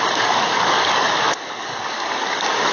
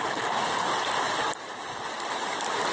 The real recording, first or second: second